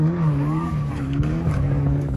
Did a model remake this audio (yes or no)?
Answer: yes